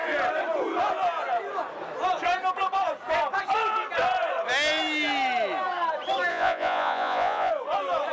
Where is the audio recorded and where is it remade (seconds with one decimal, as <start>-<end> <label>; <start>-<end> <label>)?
0.0-6.3 recorded; 6.3-7.5 remade; 7.5-8.1 recorded